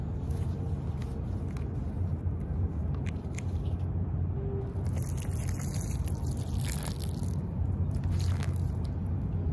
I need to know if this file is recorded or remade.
recorded